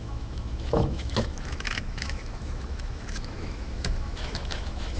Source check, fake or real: fake